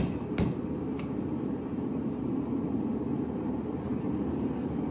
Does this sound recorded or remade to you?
remade